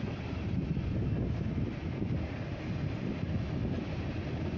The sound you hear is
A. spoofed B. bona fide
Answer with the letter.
B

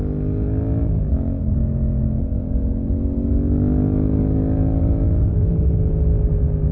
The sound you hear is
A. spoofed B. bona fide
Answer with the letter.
B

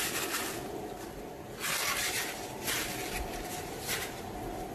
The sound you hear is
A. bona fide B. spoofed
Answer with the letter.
A